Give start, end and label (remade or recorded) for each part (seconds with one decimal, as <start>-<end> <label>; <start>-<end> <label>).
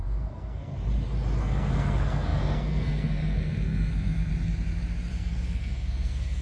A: 0.0-0.7 remade; 0.7-1.4 recorded; 1.4-4.3 remade; 4.3-5.1 recorded; 5.1-6.4 remade